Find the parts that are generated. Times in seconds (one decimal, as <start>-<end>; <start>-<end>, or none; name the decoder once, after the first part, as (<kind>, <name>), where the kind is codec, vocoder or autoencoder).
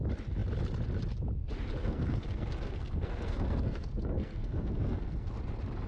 1.8-5.3 (codec, SNAC)